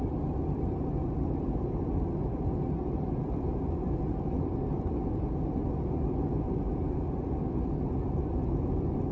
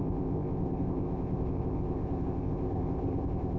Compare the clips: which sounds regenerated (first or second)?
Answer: second